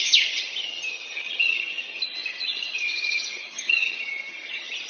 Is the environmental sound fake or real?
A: fake